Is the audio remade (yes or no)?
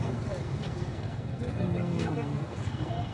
yes